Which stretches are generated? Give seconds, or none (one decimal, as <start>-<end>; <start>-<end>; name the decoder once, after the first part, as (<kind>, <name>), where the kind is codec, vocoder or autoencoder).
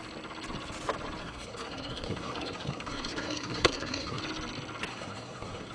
1.2-4.2 (codec, SNAC); 4.9-5.7